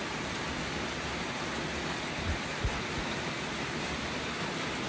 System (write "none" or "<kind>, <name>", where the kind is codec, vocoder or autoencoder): none